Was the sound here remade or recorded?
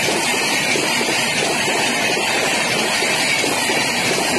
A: remade